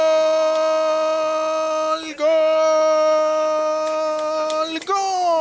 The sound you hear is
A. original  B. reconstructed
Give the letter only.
A